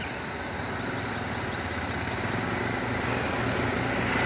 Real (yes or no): yes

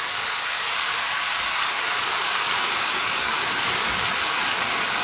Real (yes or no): no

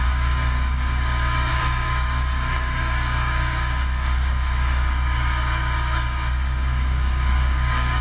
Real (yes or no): no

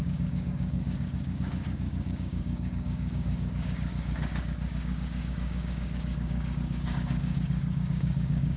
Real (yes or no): no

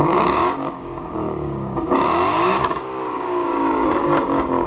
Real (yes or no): no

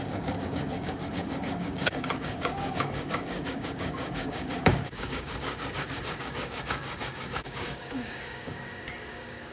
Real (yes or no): no